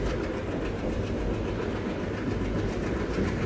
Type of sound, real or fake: real